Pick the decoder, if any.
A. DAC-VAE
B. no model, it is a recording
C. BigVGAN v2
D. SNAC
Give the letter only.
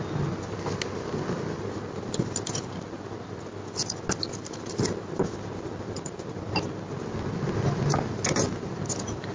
B